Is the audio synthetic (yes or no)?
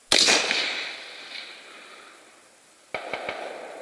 no